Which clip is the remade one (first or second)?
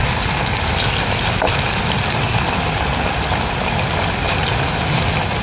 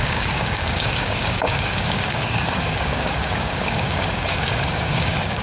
second